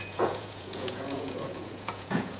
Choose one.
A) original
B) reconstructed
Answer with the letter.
B